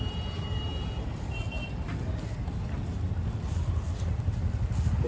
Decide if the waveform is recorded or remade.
recorded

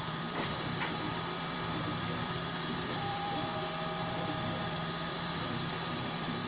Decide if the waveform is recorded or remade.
remade